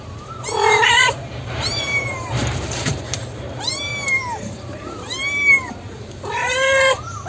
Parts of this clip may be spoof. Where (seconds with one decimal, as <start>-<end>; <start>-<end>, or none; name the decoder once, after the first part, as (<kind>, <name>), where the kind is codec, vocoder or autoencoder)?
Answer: 0.0-3.9 (vocoder, BigVGAN v2); 4.4-7.3